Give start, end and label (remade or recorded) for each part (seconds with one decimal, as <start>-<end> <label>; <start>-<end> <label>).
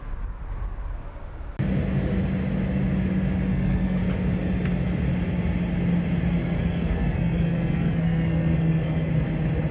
0.0-3.5 recorded; 3.5-4.0 remade; 4.0-6.4 recorded; 6.4-9.1 remade; 9.1-9.7 recorded